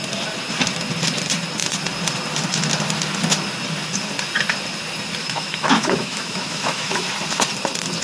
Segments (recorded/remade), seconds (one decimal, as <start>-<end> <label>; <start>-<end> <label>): 0.0-5.2 recorded; 5.2-7.0 remade; 7.0-8.0 recorded